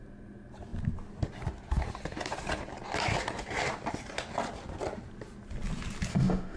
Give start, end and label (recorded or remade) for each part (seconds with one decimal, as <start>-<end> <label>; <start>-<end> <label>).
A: 0.0-6.1 recorded; 6.1-6.6 remade